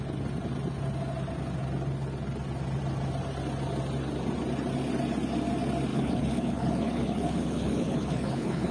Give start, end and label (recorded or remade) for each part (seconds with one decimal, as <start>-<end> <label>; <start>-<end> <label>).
0.0-5.9 recorded; 5.9-8.7 remade